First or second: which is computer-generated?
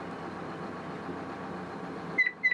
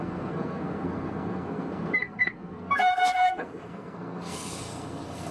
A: second